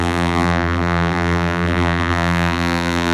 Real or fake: fake